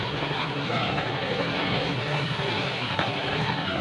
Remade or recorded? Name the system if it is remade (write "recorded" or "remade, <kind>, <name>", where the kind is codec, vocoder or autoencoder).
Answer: remade, codec, SNAC